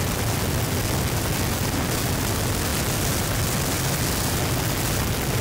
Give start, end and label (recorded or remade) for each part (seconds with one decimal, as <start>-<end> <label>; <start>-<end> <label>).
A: 0.0-5.4 recorded